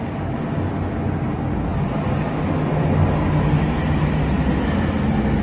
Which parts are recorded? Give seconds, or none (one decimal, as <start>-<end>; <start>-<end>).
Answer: 0.0-5.4